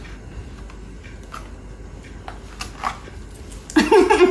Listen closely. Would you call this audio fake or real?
real